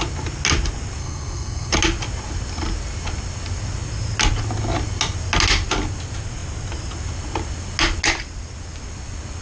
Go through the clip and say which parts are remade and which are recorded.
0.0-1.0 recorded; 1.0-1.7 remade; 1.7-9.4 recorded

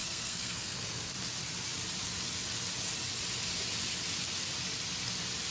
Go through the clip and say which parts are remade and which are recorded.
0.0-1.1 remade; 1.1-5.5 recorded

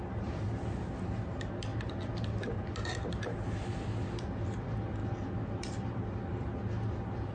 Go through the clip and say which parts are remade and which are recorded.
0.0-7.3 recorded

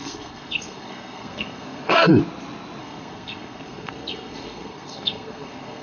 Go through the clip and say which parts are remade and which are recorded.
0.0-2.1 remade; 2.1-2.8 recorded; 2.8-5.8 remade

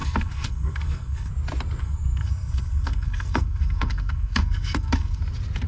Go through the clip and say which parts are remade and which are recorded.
0.0-1.3 remade; 1.3-1.8 recorded; 1.8-5.2 remade; 5.2-5.7 recorded